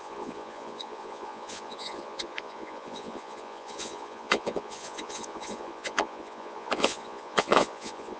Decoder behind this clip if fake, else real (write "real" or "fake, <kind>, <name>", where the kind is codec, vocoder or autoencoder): fake, vocoder, Vocos